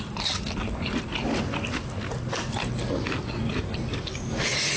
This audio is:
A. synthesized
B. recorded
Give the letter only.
B